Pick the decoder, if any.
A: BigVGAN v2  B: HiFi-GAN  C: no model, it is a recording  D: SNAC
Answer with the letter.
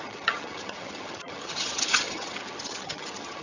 B